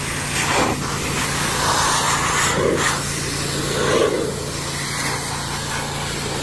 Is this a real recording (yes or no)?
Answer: yes